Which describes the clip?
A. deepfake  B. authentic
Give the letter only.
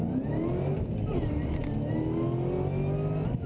B